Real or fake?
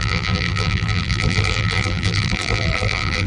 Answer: fake